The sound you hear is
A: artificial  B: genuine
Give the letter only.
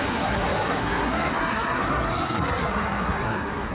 A